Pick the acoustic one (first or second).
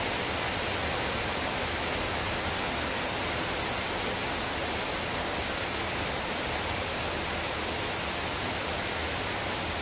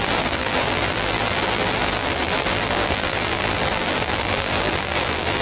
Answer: first